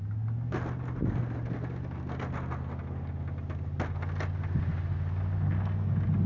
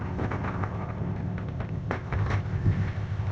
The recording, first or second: first